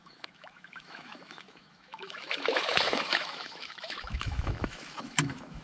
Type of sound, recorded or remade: remade